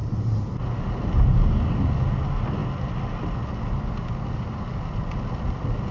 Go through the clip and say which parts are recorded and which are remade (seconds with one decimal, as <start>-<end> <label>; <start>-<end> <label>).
0.0-1.8 remade; 1.8-5.9 recorded